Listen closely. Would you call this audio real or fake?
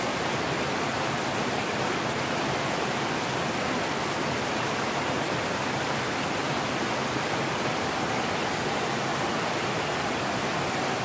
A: real